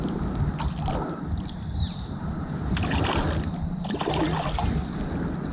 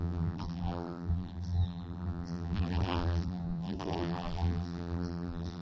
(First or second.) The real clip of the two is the first